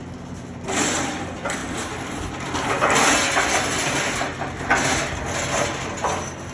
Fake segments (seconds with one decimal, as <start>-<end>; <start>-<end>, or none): none